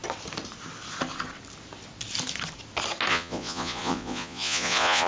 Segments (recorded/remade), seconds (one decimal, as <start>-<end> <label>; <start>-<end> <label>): 0.0-3.1 recorded; 3.1-5.1 remade